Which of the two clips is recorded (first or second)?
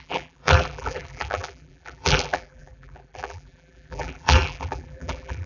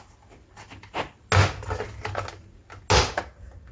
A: second